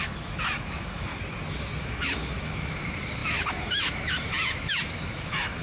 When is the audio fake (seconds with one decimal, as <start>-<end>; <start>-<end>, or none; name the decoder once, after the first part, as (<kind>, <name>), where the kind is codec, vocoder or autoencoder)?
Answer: 0.0-1.1 (autoencoder, DAC-VAE); 1.8-5.6